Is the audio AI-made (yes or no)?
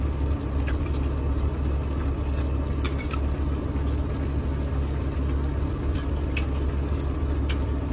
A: no